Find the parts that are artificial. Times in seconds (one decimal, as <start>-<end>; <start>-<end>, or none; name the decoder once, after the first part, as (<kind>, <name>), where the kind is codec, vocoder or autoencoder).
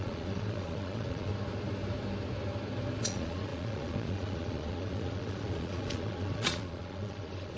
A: 0.0-1.3 (vocoder, Vocos); 3.0-7.6